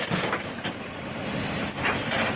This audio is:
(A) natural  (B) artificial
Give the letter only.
A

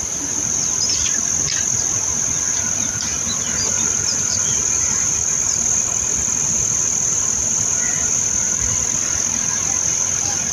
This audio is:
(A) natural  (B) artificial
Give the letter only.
A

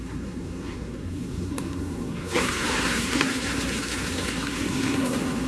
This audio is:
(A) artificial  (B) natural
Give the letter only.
A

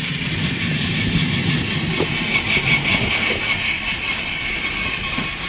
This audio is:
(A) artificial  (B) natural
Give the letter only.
B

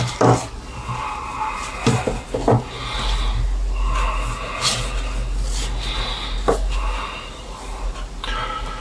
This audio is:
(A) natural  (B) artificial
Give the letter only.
A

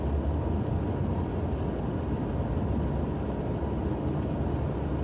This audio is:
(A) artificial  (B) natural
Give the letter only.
B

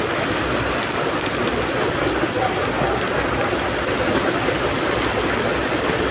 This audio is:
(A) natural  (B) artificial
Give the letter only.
A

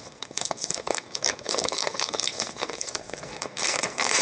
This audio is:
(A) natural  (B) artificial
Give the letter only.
B